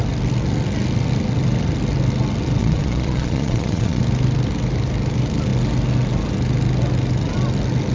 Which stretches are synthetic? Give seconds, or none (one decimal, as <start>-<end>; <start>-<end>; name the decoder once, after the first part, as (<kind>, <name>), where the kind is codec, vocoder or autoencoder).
2.6-4.0 (vocoder, Vocos)